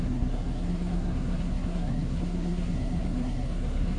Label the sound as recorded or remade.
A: remade